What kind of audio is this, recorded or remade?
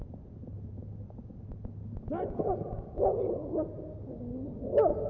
recorded